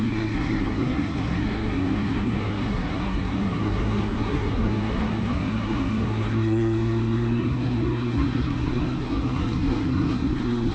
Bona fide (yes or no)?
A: no